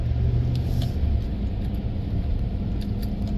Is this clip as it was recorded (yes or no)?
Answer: yes